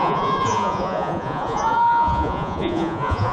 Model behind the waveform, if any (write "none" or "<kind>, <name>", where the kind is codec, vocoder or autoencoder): vocoder, Vocos